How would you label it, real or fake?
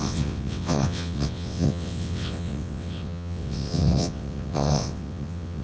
fake